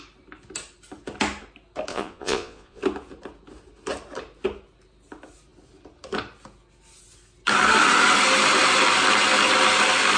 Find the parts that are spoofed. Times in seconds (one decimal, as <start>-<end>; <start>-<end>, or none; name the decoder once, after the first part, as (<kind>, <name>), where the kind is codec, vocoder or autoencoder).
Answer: 1.9-2.8 (vocoder, Vocos)